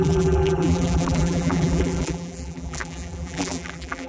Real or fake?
fake